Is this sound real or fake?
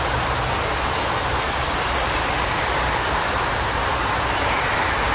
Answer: real